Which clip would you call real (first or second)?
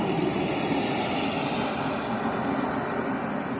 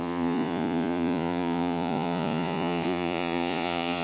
first